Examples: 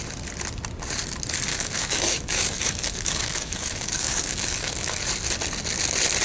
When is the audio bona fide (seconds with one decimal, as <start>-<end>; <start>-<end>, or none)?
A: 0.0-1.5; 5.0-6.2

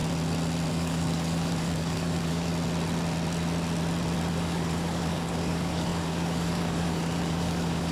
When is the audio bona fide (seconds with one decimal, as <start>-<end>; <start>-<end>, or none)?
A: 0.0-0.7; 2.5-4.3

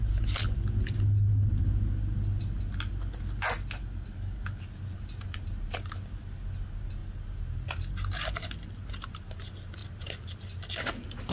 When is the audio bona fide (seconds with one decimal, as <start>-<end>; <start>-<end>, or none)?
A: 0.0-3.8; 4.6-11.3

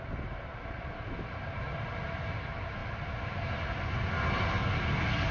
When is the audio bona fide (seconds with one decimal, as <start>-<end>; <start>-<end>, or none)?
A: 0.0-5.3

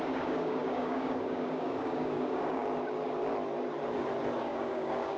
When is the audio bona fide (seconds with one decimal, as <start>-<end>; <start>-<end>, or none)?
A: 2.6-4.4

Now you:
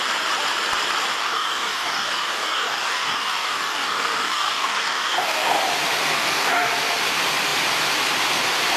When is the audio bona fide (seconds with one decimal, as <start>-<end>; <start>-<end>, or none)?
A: 0.0-1.2; 5.6-6.1; 6.7-8.8

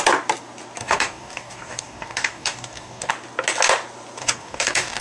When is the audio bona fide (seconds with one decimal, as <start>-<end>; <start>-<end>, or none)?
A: 0.0-0.8; 3.1-4.2

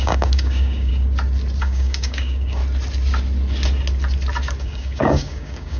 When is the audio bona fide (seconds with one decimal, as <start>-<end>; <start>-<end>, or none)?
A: 0.9-1.6; 2.6-4.6